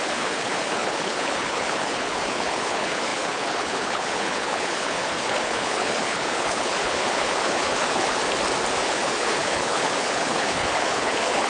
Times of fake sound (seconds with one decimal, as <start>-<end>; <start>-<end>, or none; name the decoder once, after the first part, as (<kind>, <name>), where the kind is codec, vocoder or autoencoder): 0.0-8.2 (codec, HILCodec); 8.8-11.5